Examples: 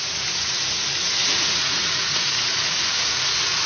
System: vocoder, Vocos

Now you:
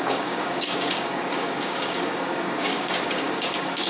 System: codec, DAC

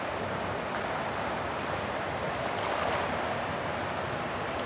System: none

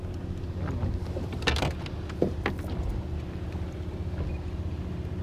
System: none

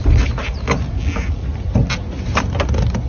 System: none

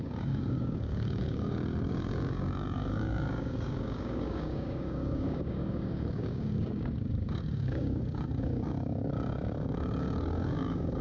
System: codec, DAC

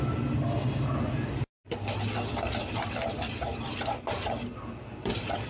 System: vocoder, BigVGAN v2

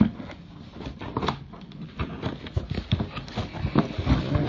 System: none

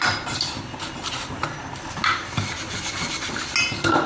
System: none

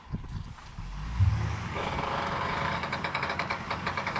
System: codec, DAC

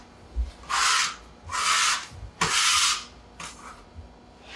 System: none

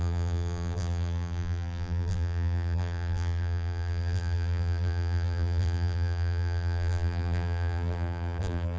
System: vocoder, BigVGAN v2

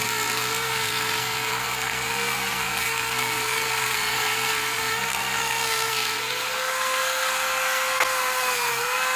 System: codec, SNAC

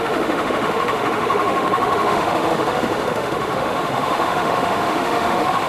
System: autoencoder, DAC-VAE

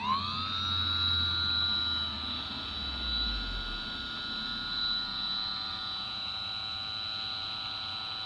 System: none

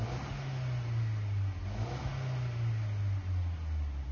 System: none